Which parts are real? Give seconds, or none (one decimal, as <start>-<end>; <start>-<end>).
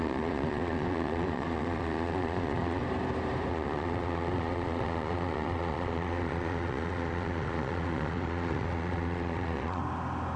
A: 2.8-3.5; 9.8-10.4